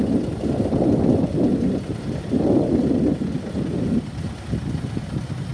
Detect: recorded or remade recorded